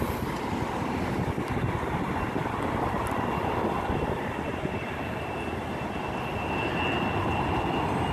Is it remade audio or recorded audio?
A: recorded